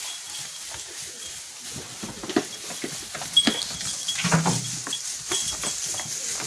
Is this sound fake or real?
real